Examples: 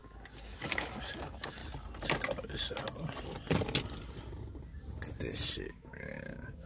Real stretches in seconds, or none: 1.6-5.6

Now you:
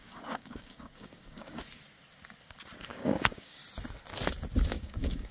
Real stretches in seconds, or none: 1.6-2.8; 3.6-4.7

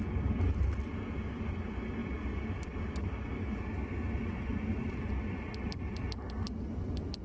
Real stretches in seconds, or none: 0.0-7.2

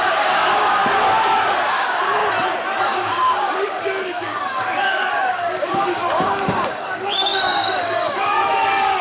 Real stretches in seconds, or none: 0.8-1.7; 2.2-2.8

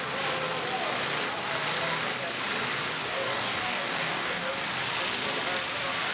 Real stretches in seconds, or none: 0.0-3.1; 4.5-6.1